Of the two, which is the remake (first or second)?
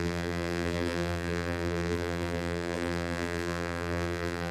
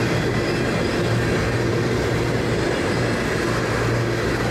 first